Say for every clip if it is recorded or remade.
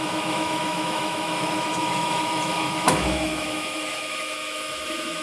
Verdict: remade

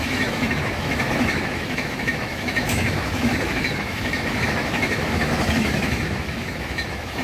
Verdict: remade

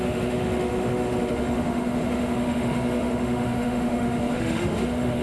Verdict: remade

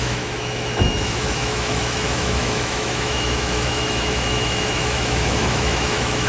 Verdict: remade